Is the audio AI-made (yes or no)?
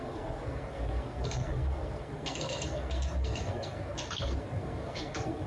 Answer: yes